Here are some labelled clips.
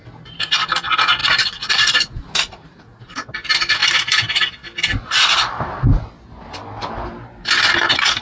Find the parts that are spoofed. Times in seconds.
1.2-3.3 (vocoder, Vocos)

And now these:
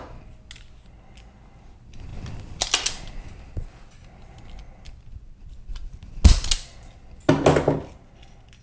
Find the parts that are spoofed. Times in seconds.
none

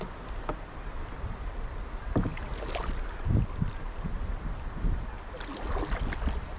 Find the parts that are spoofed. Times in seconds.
none